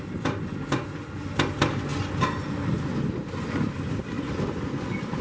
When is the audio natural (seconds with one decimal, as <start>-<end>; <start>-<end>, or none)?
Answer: 0.0-5.2